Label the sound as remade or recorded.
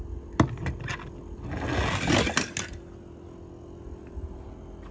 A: recorded